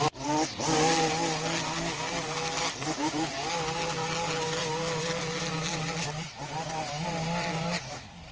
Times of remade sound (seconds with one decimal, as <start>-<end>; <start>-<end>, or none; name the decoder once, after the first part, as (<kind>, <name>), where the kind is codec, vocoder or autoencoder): none